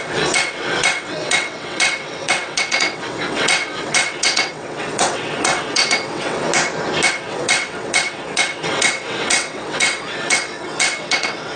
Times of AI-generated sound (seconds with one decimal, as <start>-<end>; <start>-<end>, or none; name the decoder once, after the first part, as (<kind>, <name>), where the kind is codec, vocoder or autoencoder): 0.0-6.5 (vocoder, WaveNeXt); 7.1-11.6